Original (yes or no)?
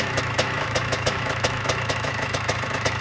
no